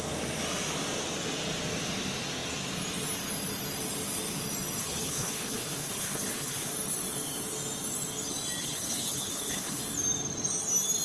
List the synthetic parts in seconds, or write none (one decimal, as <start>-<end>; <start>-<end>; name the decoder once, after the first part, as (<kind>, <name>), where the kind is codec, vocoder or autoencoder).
4.8-6.7 (codec, HILCodec); 8.6-9.8